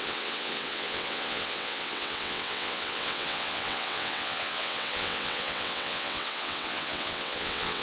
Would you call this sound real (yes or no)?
no